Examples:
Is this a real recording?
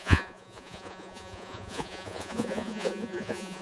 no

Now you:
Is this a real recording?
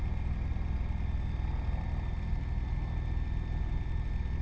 yes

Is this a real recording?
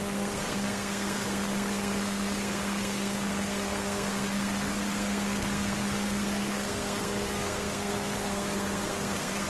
no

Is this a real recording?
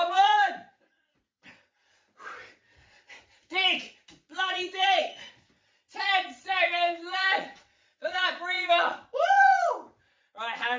no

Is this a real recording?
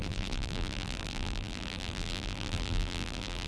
no